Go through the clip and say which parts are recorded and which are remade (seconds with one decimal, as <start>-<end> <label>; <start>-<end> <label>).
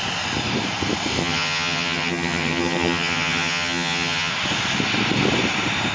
0.0-1.2 recorded; 1.2-4.3 remade; 4.3-5.9 recorded